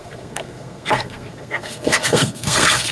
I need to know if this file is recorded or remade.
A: remade